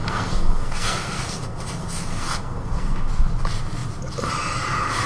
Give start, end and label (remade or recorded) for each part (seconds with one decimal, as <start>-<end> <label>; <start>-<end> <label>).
0.0-3.1 remade; 3.1-5.1 recorded